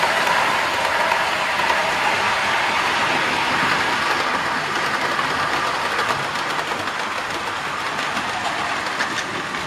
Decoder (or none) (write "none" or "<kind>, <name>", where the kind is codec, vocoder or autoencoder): none